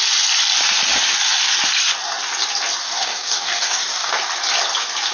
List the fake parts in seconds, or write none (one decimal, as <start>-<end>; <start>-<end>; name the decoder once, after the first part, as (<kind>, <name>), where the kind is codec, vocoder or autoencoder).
2.8-4.1 (codec, DAC)